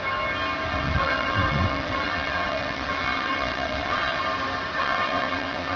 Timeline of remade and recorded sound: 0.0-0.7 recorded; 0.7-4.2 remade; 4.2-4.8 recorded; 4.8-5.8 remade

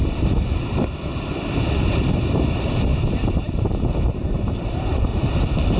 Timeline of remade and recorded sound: 0.0-1.5 recorded; 1.5-2.9 remade; 2.9-3.8 recorded; 3.8-5.1 remade; 5.1-5.8 recorded

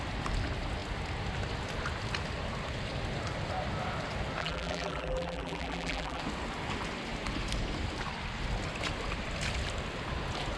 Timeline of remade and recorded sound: 0.0-4.4 recorded; 4.4-6.2 remade; 6.2-10.6 recorded

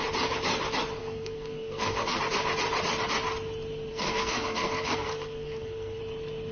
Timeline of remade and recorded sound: 0.0-1.0 recorded; 1.0-2.2 remade; 2.2-3.9 recorded; 3.9-6.0 remade; 6.0-6.5 recorded

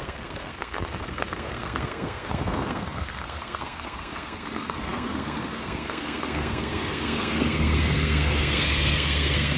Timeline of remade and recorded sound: 0.0-9.6 remade

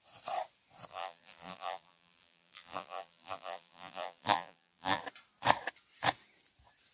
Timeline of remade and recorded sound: 0.0-0.9 recorded; 0.9-5.0 remade; 5.0-6.9 recorded